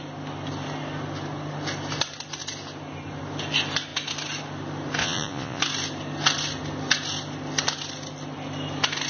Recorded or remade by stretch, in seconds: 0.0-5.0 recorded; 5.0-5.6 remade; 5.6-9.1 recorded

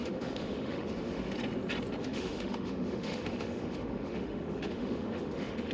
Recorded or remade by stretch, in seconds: 0.0-1.3 remade; 1.3-2.0 recorded; 2.0-5.7 remade

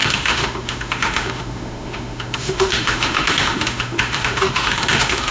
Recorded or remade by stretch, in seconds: 0.0-5.3 remade

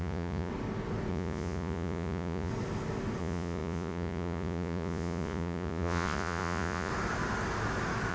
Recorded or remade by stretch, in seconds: 0.0-0.5 remade; 0.5-1.1 recorded; 1.1-2.5 remade; 2.5-3.2 recorded; 3.2-6.9 remade; 6.9-8.1 recorded

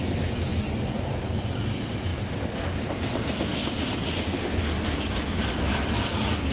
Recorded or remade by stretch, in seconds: 0.0-6.5 recorded

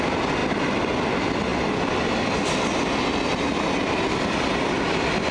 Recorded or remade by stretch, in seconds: 0.0-5.3 recorded

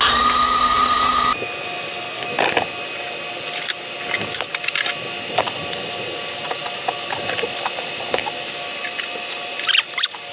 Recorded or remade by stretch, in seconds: 0.0-10.3 recorded